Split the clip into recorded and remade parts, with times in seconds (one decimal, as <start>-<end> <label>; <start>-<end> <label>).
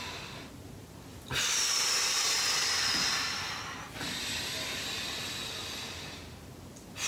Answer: 0.0-7.1 recorded